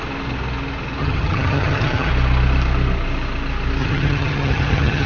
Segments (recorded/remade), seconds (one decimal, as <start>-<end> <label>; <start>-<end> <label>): 0.0-1.0 recorded; 1.0-2.1 remade; 2.1-3.8 recorded; 3.8-5.1 remade